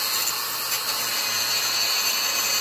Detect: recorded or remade recorded